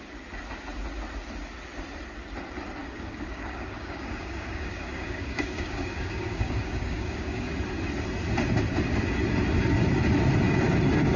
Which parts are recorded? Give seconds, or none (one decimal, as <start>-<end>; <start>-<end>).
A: 0.0-2.8; 7.5-11.2

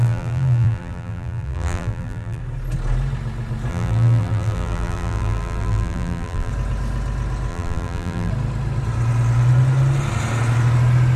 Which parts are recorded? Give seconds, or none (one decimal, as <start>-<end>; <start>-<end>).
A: 2.4-3.7; 6.5-7.5; 8.3-11.2

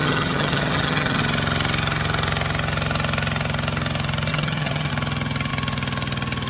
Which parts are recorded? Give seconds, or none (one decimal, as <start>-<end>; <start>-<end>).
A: 1.2-4.3; 4.9-6.5